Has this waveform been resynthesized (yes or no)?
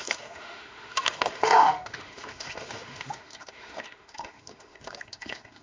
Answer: yes